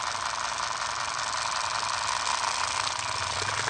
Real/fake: real